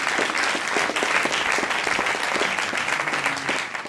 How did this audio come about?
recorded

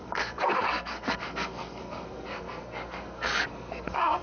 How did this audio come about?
remade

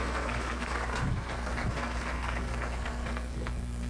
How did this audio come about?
remade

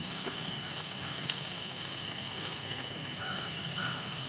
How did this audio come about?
remade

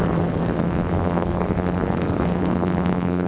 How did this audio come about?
remade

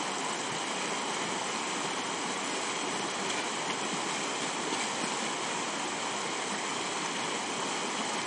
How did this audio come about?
recorded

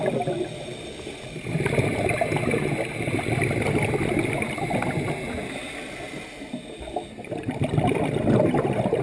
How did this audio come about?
recorded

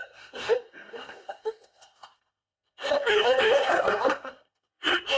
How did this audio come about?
remade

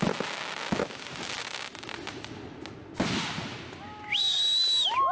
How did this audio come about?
recorded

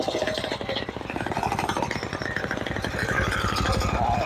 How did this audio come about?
recorded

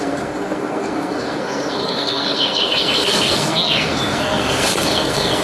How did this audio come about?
remade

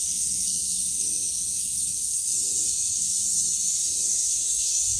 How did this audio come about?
remade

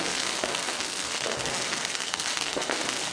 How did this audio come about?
remade